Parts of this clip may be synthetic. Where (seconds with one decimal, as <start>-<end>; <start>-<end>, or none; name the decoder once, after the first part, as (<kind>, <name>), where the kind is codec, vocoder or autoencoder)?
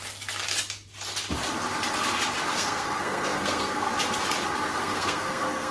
2.5-3.9 (codec, SNAC); 4.8-5.7